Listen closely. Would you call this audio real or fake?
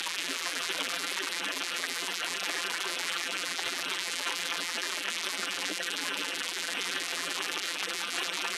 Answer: fake